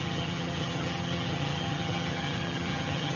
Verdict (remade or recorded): remade